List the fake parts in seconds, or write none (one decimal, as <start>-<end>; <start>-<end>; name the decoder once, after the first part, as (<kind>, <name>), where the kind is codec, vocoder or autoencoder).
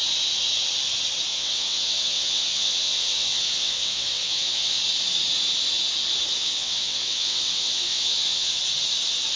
1.3-4.8 (vocoder, WaveNeXt); 6.3-8.6